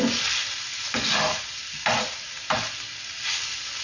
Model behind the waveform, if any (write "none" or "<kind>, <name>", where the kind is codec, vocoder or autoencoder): none